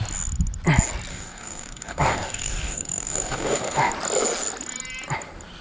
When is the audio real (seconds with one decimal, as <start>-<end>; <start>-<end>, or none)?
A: 0.0-1.1; 3.9-5.6